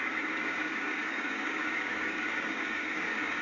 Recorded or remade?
remade